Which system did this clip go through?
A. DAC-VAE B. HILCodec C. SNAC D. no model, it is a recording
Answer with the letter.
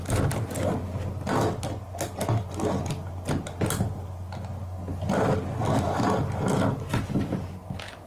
D